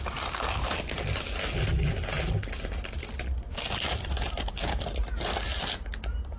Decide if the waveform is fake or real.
real